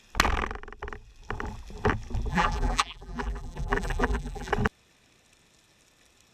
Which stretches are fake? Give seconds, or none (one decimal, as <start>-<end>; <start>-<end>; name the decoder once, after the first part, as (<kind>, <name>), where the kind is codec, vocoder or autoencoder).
2.3-4.5 (vocoder, BigVGAN v2)